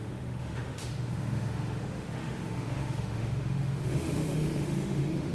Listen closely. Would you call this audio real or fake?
fake